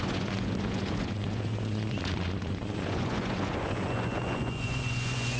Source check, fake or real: fake